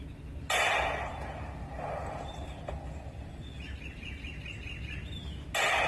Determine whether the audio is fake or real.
real